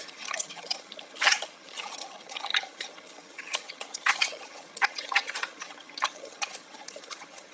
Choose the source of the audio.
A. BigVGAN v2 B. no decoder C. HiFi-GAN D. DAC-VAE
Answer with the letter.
C